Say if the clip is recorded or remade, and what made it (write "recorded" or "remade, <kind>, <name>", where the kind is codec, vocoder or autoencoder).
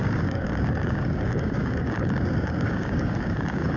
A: remade, codec, DAC